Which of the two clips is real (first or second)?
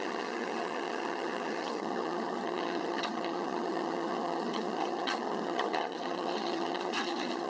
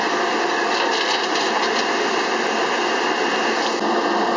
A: second